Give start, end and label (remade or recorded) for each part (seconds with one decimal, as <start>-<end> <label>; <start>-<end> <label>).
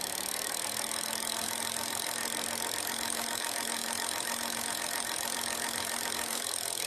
0.0-2.2 remade; 2.2-2.8 recorded; 2.8-6.9 remade